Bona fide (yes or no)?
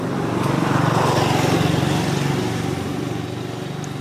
yes